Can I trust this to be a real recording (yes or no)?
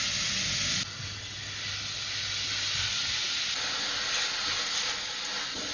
yes